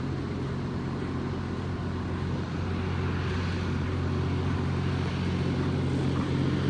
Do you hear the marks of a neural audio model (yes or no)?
no